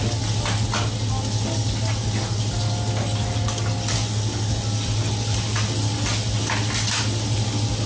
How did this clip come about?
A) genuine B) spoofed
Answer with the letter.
A